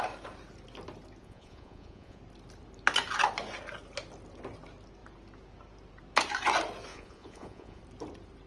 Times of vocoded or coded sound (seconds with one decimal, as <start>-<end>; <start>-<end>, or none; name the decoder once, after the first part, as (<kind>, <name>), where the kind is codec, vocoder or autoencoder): 1.2-2.2 (vocoder, Vocos); 6.9-7.8